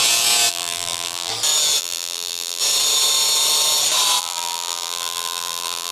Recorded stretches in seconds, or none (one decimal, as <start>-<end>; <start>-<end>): 0.0-0.5; 1.3-1.8; 2.6-4.2